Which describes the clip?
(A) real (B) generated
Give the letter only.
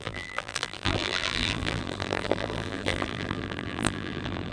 B